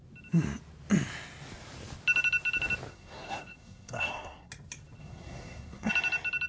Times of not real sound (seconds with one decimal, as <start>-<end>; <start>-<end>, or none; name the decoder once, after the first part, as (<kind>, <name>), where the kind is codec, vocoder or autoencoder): 2.9-4.5 (codec, SNAC); 5.0-5.9